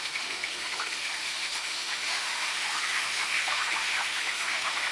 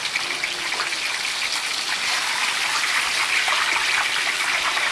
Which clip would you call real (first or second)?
second